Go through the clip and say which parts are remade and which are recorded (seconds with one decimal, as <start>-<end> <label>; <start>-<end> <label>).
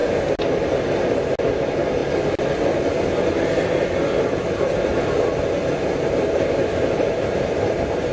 0.0-1.4 recorded; 1.4-2.0 remade; 2.0-4.6 recorded; 4.6-8.1 remade